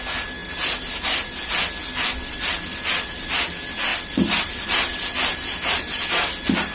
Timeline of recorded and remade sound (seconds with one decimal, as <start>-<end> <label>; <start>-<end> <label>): 0.0-6.7 recorded